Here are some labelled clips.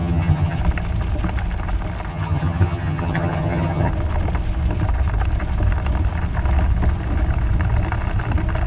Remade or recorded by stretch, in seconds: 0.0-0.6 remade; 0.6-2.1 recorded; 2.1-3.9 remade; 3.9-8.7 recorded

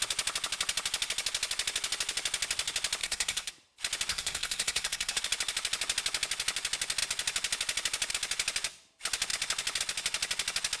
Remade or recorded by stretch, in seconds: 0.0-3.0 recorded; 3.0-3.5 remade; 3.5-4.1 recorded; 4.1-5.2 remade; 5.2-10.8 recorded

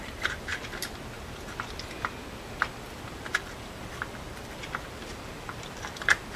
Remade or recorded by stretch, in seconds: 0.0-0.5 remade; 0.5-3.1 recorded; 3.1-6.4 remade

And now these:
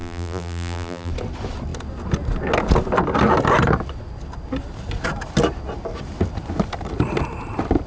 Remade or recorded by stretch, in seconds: 0.0-1.1 remade; 1.1-7.9 recorded

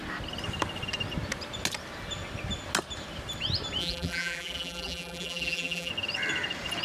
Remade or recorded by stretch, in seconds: 0.0-3.8 recorded; 3.8-5.9 remade; 5.9-6.8 recorded